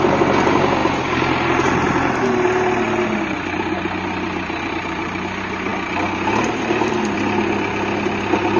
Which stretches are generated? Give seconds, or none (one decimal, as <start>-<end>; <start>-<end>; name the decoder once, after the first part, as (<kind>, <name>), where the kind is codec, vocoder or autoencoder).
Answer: none